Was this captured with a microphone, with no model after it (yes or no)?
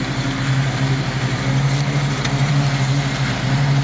no